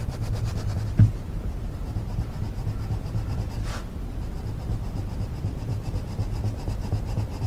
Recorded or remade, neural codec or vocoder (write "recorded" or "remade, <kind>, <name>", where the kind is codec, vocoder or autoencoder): remade, vocoder, BigVGAN v2